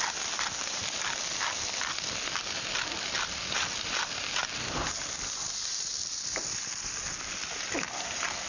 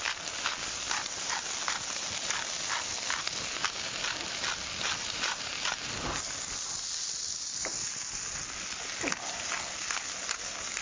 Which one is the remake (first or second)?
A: first